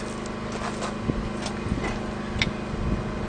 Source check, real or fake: real